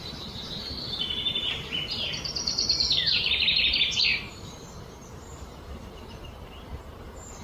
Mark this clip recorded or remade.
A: remade